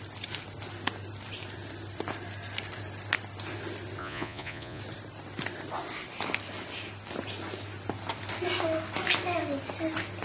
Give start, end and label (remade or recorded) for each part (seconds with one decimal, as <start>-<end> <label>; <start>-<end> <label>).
0.0-4.0 recorded; 4.0-4.8 remade; 4.8-10.2 recorded